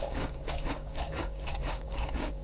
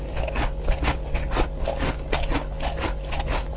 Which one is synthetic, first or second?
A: first